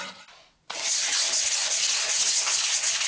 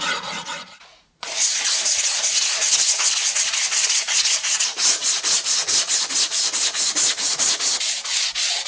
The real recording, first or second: first